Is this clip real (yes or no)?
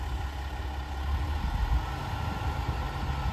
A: yes